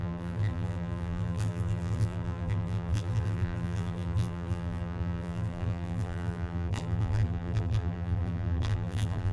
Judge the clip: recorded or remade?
remade